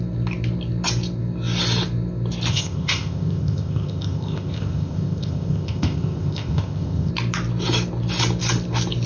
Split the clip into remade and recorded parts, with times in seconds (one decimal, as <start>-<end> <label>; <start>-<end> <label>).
0.0-2.5 recorded; 2.5-7.1 remade; 7.1-9.1 recorded